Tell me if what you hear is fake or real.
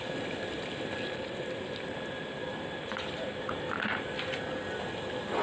real